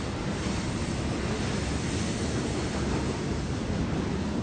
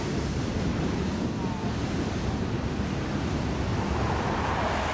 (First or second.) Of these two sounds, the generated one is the second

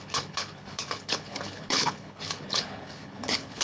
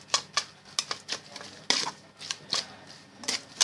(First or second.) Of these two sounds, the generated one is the first